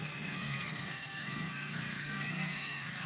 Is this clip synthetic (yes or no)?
yes